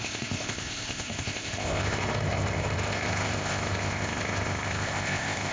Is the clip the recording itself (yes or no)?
no